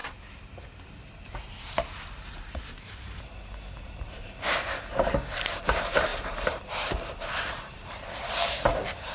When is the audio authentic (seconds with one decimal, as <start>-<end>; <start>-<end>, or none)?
0.0-2.7